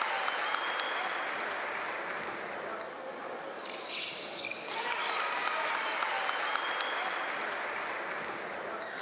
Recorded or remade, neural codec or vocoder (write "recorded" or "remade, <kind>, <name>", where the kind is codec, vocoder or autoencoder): recorded